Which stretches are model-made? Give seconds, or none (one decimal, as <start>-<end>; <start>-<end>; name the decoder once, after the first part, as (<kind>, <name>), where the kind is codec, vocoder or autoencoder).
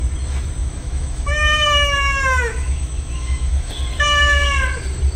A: 0.6-3.7 (autoencoder, DAC-VAE)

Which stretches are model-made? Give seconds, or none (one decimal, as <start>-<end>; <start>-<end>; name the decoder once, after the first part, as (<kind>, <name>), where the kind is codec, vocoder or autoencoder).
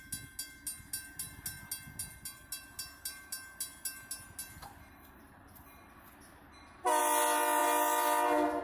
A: none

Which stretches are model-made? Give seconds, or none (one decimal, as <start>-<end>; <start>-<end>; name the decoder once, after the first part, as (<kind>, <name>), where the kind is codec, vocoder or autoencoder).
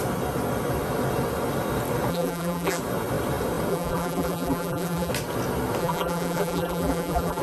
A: 2.1-2.8 (vocoder, BigVGAN v2); 3.7-5.1; 5.8-7.4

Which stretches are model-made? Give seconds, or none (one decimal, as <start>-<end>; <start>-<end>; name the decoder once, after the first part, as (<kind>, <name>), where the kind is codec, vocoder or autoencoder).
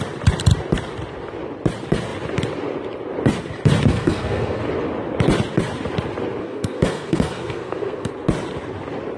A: 3.9-4.6 (codec, SNAC); 6.4-8.1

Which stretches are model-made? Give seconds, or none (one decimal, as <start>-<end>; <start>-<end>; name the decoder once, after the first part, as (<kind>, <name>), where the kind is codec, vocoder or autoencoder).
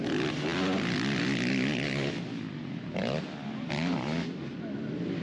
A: none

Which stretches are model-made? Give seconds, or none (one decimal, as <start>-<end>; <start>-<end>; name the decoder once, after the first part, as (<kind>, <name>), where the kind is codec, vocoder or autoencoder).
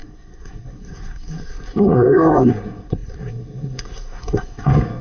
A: 0.0-5.0 (codec, SNAC)